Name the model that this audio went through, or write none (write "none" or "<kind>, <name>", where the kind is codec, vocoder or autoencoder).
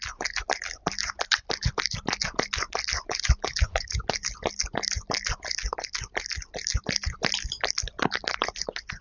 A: none